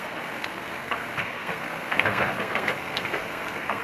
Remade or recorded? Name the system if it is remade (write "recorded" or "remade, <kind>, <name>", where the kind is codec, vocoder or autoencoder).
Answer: remade, codec, SNAC